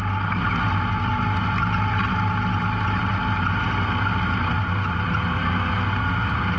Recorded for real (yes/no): yes